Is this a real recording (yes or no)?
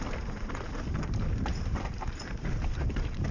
no